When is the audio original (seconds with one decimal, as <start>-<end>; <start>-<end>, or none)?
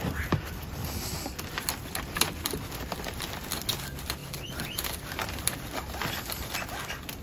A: 0.0-0.8; 2.4-4.2; 5.7-7.2